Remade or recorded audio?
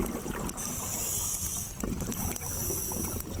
recorded